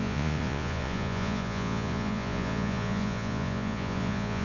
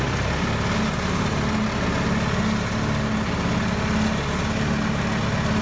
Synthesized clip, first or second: first